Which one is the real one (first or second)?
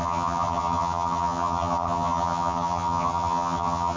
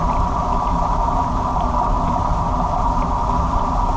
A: second